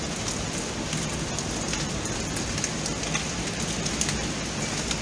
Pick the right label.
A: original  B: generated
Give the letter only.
A